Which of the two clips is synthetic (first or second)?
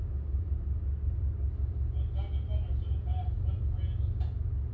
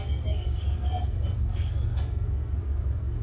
second